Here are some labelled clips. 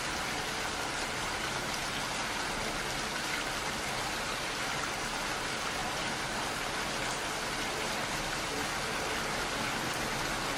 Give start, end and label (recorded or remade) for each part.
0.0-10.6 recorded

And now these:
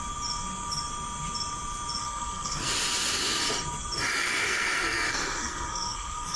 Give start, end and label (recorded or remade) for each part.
0.0-2.0 recorded; 2.0-2.7 remade; 2.7-4.2 recorded; 4.2-6.4 remade

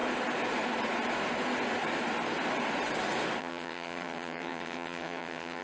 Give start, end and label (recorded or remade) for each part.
0.0-3.4 recorded; 3.4-5.6 remade

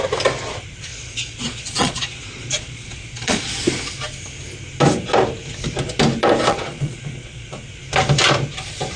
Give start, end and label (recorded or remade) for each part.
0.0-0.9 recorded; 0.9-3.5 remade; 3.5-6.5 recorded; 6.5-7.7 remade; 7.7-9.0 recorded

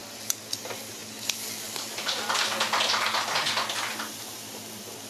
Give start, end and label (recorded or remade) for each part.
0.0-5.1 recorded

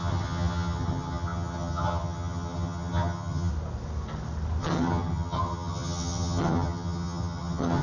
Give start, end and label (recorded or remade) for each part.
0.0-3.5 remade; 3.5-4.6 recorded; 4.6-7.8 remade

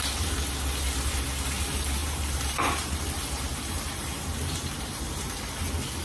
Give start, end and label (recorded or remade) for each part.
0.0-2.0 recorded; 2.0-5.6 remade; 5.6-6.0 recorded